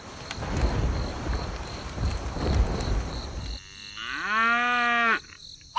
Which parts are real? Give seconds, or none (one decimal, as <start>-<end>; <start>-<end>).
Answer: 0.0-1.1; 3.4-5.8